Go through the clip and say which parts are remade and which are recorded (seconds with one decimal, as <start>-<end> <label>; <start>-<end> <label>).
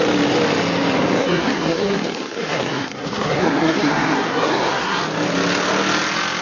0.0-1.2 recorded; 1.2-5.0 remade; 5.0-6.4 recorded